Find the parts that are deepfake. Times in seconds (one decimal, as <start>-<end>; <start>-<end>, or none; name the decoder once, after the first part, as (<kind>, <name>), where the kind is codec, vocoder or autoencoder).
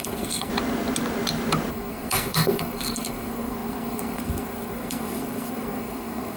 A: 0.0-0.5 (codec, SNAC); 1.7-6.4